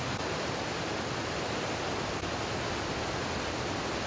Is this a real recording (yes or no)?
yes